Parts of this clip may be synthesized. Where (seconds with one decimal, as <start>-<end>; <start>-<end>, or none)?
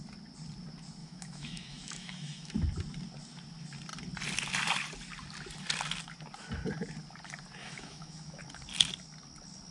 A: 1.0-2.5; 7.6-8.4